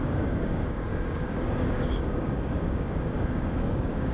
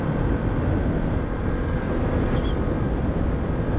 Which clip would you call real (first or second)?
second